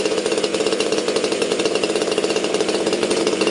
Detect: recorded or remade remade